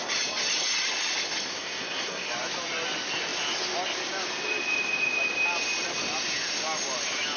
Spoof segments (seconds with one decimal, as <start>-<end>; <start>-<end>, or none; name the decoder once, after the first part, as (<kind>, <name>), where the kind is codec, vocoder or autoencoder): 1.5-2.3 (codec, SNAC)